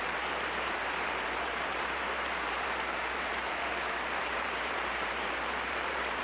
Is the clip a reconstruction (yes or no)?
yes